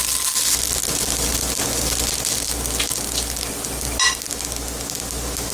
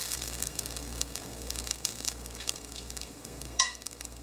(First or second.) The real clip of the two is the first